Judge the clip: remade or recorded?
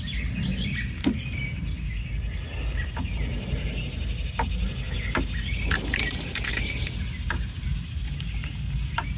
recorded